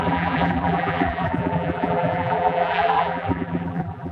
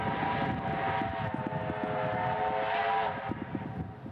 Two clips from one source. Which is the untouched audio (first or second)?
second